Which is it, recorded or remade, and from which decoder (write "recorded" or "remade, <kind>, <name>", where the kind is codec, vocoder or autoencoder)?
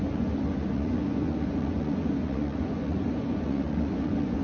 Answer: remade, vocoder, Vocos